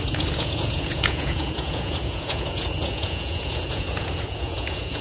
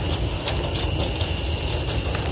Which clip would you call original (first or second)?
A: second